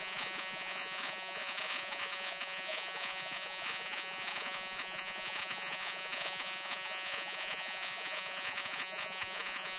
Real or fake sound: fake